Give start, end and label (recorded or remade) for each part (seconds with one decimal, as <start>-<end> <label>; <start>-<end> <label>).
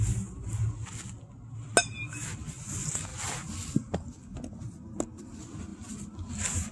0.0-5.7 recorded; 5.7-6.3 remade; 6.3-6.7 recorded